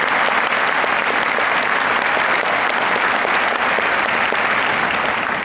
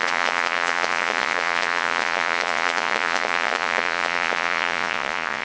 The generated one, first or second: second